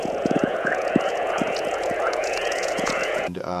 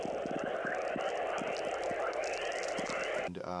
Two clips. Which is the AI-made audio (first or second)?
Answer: first